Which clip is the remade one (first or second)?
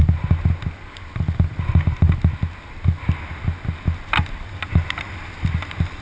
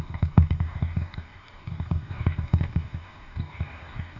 second